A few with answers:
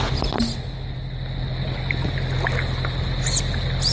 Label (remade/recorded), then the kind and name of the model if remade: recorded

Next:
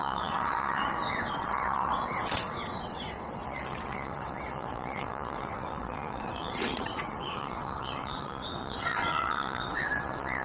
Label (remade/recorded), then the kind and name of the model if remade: remade, vocoder, WaveNeXt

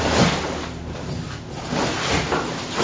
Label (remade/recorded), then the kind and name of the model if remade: recorded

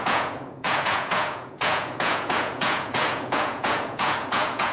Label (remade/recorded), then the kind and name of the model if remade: remade, vocoder, Vocos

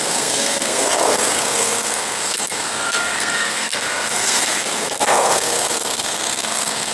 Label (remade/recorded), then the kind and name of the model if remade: remade, codec, SNAC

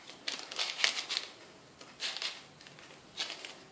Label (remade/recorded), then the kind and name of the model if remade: recorded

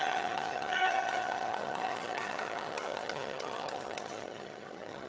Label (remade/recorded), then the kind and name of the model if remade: remade, vocoder, HiFi-GAN